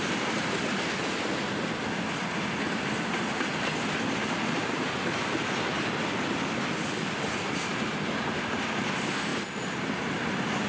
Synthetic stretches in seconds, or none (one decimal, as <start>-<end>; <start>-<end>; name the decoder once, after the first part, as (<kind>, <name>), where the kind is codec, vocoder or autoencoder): none